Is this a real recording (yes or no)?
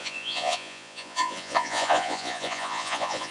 no